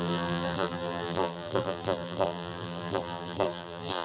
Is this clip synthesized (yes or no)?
yes